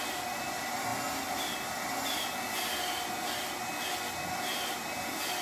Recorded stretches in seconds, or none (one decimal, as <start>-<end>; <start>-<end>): 0.0-5.4